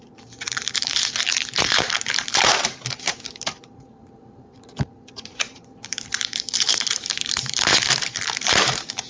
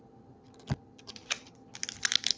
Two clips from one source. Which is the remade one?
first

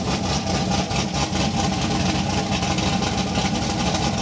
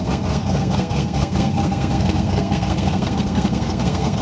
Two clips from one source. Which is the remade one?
second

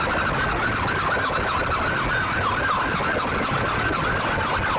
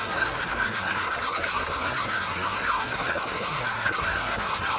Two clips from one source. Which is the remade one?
second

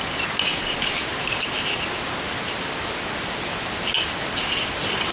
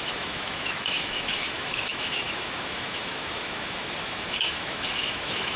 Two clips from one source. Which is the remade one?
second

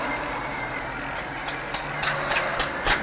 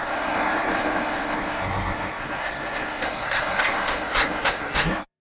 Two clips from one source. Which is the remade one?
second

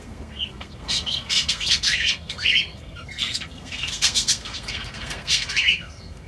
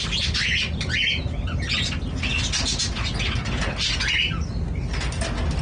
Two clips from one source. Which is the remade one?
first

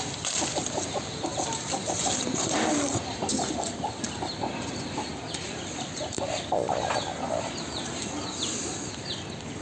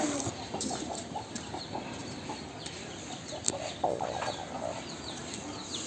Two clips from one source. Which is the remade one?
first